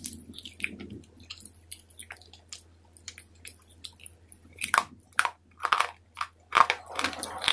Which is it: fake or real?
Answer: fake